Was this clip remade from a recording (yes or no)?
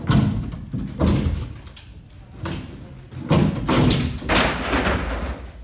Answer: no